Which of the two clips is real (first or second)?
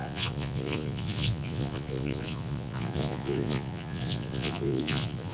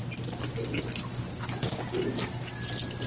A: second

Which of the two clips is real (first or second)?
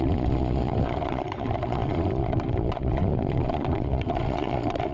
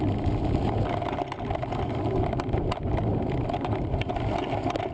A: second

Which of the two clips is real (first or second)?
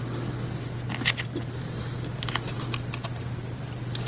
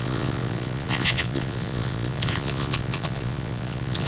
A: first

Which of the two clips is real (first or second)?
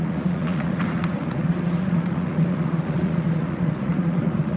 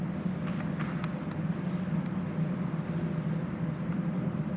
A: second